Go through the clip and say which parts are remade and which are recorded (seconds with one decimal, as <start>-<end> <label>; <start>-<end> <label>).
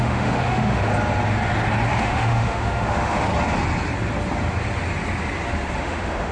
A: 0.0-0.9 remade; 0.9-2.0 recorded; 2.0-3.3 remade; 3.3-5.8 recorded; 5.8-6.3 remade